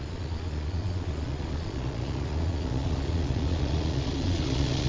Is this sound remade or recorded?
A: remade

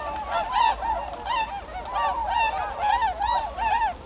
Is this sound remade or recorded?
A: recorded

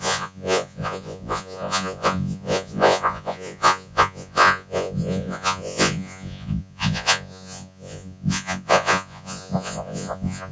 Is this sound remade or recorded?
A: remade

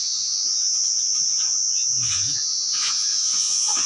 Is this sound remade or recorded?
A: remade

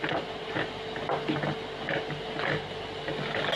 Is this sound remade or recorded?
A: recorded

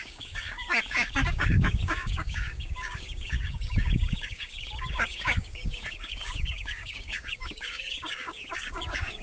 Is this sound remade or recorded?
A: remade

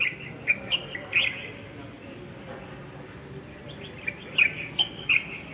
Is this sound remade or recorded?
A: recorded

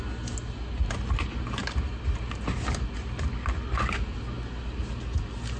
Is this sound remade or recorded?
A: recorded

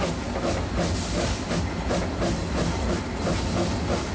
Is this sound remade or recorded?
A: recorded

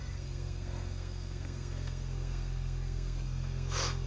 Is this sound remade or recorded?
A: remade